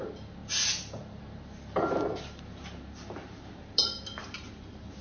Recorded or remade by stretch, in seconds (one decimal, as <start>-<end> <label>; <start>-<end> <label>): 0.0-5.0 recorded